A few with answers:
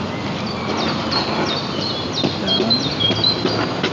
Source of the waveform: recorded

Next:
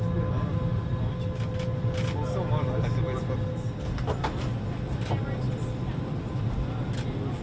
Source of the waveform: recorded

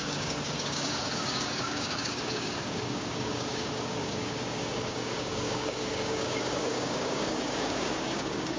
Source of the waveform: remade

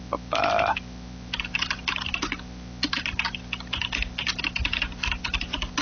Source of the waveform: recorded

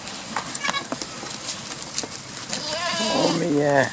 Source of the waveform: recorded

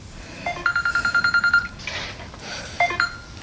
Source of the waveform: recorded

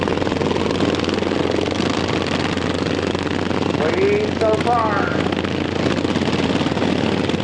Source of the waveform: recorded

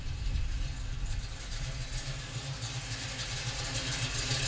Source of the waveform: recorded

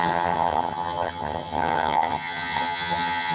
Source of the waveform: remade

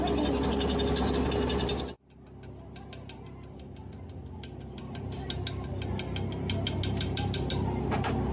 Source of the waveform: recorded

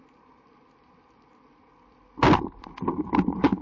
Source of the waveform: recorded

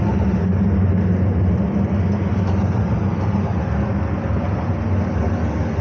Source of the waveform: recorded